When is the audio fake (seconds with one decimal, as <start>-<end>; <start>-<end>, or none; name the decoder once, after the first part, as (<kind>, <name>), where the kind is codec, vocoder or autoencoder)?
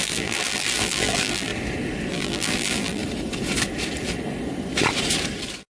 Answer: 0.0-1.5 (vocoder, BigVGAN v2); 2.1-3.0